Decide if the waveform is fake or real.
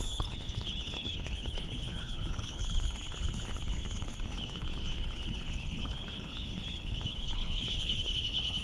fake